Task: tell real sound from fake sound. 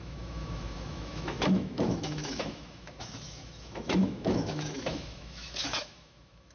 fake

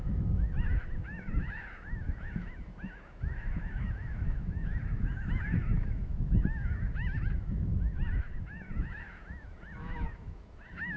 fake